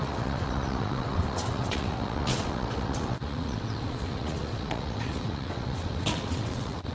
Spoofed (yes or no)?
yes